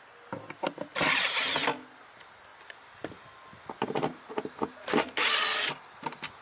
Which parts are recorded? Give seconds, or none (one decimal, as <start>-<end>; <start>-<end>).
0.0-6.4